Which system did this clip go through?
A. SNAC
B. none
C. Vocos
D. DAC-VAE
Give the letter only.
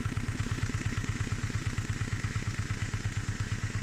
D